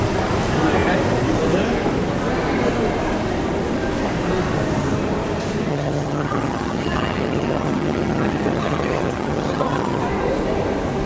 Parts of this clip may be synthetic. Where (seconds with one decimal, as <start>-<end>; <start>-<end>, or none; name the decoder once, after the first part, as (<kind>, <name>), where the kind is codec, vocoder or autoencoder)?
5.7-10.0 (vocoder, HiFi-GAN)